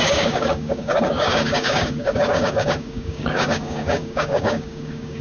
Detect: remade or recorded remade